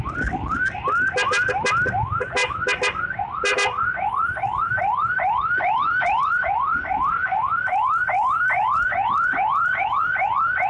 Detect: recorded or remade recorded